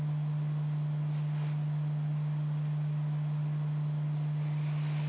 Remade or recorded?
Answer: recorded